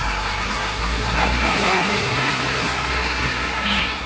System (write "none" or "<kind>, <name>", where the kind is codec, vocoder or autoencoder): codec, SNAC